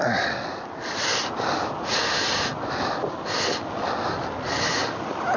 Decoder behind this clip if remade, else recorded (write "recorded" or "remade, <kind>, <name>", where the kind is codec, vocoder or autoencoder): recorded